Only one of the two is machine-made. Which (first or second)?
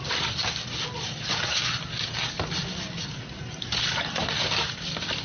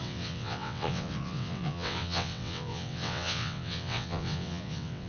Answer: second